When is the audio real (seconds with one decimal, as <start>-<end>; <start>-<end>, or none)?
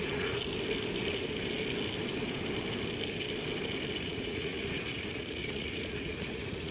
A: 0.4-4.0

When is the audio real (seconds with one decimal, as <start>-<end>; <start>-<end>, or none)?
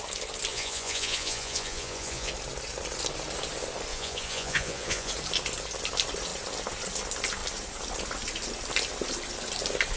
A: 0.0-0.5; 2.3-3.9; 5.1-10.0